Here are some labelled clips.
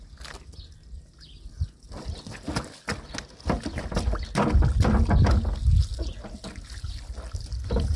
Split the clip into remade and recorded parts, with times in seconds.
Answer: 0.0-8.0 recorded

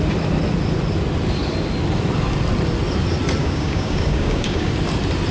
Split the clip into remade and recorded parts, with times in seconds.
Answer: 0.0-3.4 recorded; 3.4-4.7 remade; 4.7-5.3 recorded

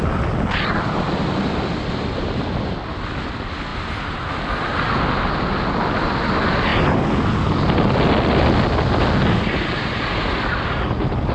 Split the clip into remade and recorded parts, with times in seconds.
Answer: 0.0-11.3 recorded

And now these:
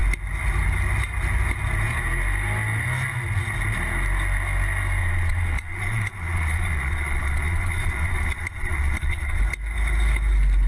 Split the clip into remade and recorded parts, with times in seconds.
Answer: 0.0-5.0 recorded; 5.0-9.4 remade; 9.4-10.7 recorded

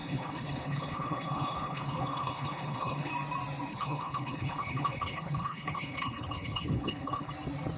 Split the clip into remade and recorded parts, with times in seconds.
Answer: 0.0-3.1 remade; 3.1-3.7 recorded; 3.7-7.3 remade; 7.3-7.8 recorded

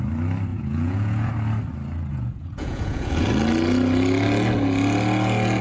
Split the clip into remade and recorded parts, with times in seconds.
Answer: 0.0-0.5 recorded; 0.5-1.3 remade; 1.3-2.1 recorded; 2.1-3.3 remade; 3.3-5.6 recorded

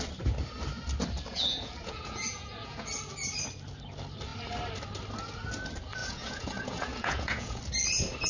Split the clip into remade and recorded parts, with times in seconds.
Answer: 0.0-1.3 recorded; 1.3-2.9 remade; 2.9-6.0 recorded; 6.0-7.6 remade; 7.6-8.3 recorded

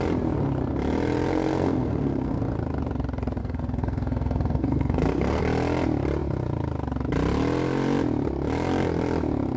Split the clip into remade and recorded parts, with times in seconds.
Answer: 0.0-1.3 recorded; 1.3-2.4 remade; 2.4-3.4 recorded; 3.4-5.4 remade; 5.4-9.6 recorded